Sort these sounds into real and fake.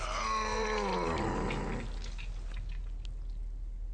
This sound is real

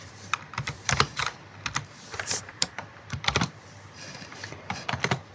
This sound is fake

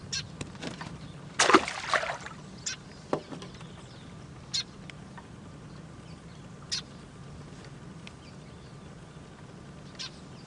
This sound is real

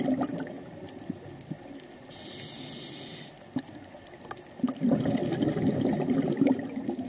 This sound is real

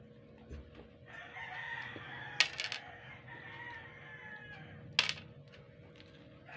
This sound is real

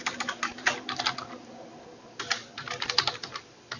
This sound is real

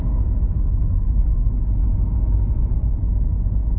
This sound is real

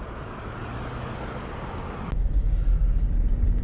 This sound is real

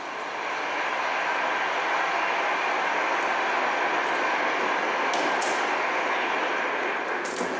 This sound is real